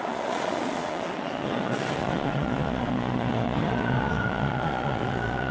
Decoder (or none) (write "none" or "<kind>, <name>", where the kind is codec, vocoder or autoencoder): vocoder, Vocos